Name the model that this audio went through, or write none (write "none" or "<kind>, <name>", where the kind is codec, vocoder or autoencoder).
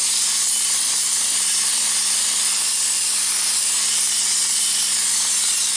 none